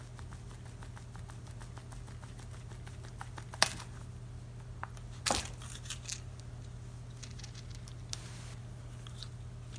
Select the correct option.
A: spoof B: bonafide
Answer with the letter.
B